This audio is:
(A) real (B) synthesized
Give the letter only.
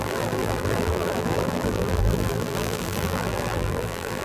B